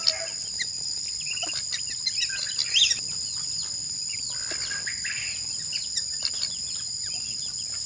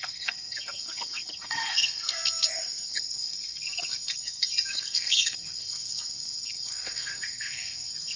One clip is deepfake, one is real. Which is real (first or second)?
first